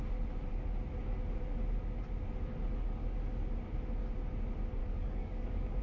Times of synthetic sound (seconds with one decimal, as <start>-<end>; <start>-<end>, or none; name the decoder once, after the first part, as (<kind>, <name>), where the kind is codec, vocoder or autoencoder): 4.8-5.8 (codec, DAC)